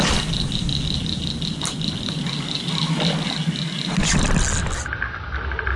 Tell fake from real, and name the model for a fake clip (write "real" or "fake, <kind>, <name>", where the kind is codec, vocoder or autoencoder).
real